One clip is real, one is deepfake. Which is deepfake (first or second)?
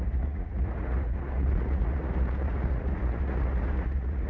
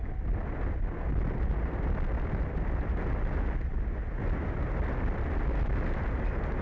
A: first